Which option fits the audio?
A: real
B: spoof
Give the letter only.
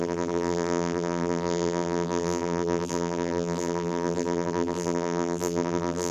B